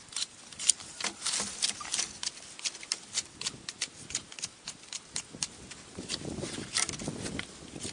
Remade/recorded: recorded